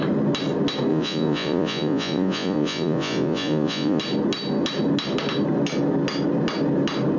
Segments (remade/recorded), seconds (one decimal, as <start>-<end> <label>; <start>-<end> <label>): 0.0-0.9 recorded; 0.9-4.0 remade; 4.0-7.2 recorded

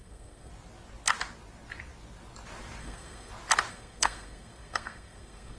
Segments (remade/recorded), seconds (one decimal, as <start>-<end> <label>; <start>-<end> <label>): 0.0-0.5 remade; 0.5-2.8 recorded; 2.8-3.3 remade; 3.3-3.7 recorded; 3.7-5.6 remade

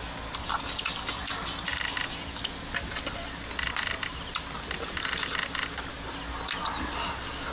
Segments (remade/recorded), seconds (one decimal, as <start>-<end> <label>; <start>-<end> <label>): 0.0-7.5 recorded

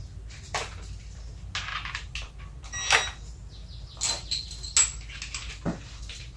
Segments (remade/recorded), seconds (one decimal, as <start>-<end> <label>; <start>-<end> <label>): 0.0-6.4 recorded

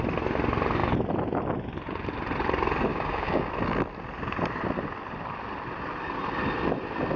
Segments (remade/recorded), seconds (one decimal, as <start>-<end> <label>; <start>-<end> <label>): 0.0-2.9 recorded; 2.9-3.5 remade; 3.5-7.2 recorded

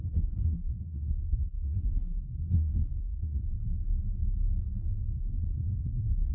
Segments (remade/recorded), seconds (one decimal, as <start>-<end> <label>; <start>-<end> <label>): 0.0-3.5 remade; 3.5-5.1 recorded; 5.1-6.3 remade

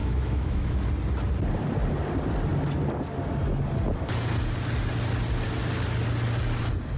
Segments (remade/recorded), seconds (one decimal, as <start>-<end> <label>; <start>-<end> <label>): 0.0-0.9 remade; 0.9-7.0 recorded

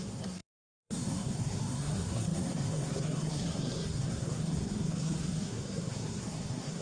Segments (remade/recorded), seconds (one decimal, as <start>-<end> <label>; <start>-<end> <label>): 0.0-6.8 remade